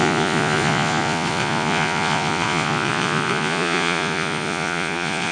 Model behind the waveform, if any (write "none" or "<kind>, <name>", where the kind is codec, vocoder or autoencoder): vocoder, Vocos